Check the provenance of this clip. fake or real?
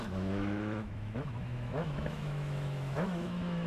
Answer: fake